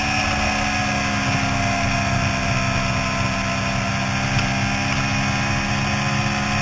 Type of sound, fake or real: real